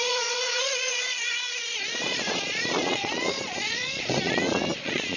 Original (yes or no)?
no